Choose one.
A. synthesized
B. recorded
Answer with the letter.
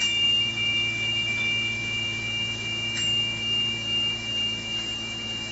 A